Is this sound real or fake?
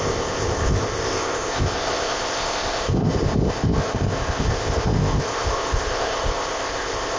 fake